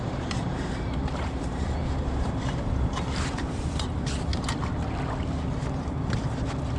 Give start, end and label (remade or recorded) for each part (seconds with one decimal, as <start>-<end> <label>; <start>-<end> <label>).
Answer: 0.0-4.3 remade; 4.3-6.8 recorded